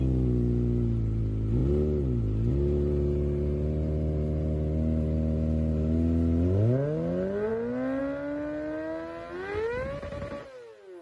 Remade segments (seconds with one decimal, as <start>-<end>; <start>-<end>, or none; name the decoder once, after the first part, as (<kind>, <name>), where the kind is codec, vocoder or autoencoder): none